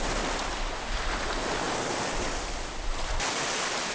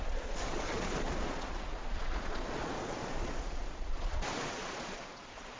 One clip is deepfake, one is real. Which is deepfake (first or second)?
second